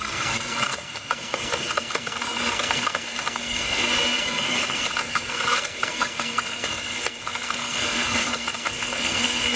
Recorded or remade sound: remade